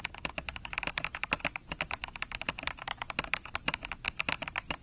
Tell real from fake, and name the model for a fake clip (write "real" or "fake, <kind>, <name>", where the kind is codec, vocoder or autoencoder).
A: real